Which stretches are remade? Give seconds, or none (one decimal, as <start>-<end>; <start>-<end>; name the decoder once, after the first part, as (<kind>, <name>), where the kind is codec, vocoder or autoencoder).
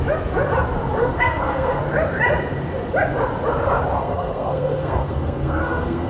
1.0-1.8 (codec, SNAC); 4.0-6.1